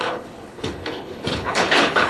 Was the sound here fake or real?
fake